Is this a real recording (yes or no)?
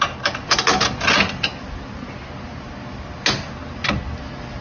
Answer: yes